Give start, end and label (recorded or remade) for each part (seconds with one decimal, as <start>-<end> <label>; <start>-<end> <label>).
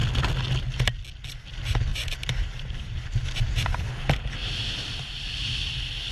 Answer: 0.0-1.9 recorded; 1.9-3.7 remade; 3.7-4.4 recorded; 4.4-5.5 remade; 5.5-6.1 recorded